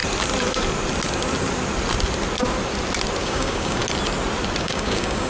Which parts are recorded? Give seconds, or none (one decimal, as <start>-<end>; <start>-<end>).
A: 0.0-3.2; 3.8-4.6